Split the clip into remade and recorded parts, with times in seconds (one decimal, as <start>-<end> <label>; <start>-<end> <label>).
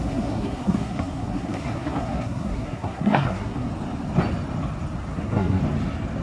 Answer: 0.0-3.7 remade; 3.7-5.1 recorded; 5.1-5.6 remade; 5.6-6.2 recorded